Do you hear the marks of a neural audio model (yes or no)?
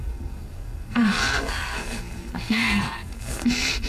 yes